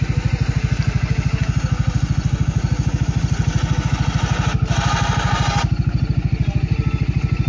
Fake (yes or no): no